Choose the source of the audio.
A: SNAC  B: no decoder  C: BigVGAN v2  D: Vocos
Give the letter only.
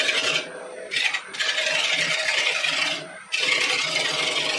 C